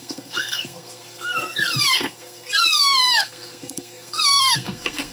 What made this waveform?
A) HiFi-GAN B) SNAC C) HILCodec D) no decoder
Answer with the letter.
B